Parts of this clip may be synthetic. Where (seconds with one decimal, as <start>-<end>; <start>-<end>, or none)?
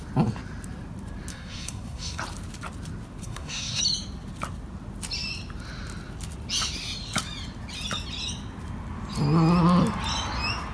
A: 1.3-2.2; 3.2-3.8